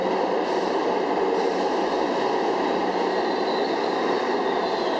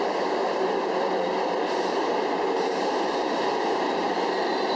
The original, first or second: first